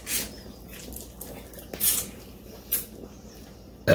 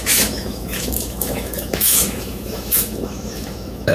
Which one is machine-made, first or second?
second